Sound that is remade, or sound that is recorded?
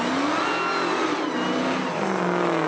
recorded